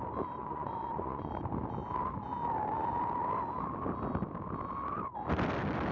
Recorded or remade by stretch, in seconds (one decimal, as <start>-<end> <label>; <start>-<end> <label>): 0.0-0.4 recorded; 0.4-1.3 remade; 1.3-5.9 recorded